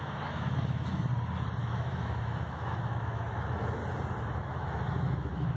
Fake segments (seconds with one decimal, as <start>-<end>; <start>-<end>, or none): 0.0-1.1; 1.6-3.8; 4.4-5.6